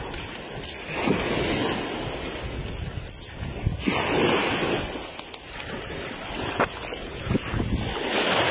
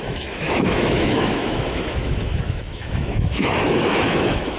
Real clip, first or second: first